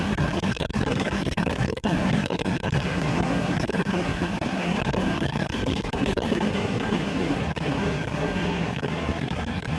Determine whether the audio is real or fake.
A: fake